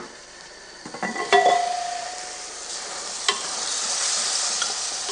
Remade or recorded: remade